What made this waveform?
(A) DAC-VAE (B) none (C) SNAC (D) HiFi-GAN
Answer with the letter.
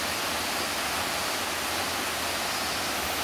B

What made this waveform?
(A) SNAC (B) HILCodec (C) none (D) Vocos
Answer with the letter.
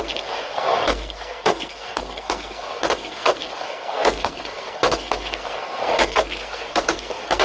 A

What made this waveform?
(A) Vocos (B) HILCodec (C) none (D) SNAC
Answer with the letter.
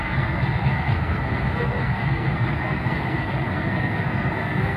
D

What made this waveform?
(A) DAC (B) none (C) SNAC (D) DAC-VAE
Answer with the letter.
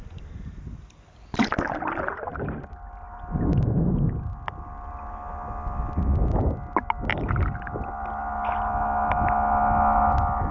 B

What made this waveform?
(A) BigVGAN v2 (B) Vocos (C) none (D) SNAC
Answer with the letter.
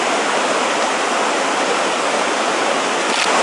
C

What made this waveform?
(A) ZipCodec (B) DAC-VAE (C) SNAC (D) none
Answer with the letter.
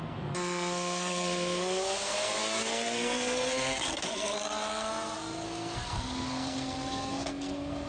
C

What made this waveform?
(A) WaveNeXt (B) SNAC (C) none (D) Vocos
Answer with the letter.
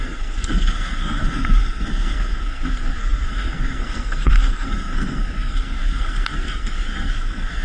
B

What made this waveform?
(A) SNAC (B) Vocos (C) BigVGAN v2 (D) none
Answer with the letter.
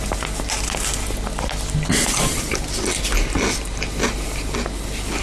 D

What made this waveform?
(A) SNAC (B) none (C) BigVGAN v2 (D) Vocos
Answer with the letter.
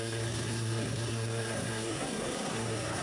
A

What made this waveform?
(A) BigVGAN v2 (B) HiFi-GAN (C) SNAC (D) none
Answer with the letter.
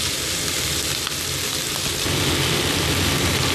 D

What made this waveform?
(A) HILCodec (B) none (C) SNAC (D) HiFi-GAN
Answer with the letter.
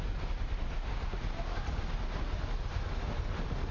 B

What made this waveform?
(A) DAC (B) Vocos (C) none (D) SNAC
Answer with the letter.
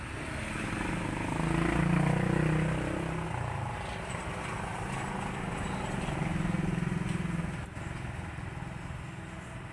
C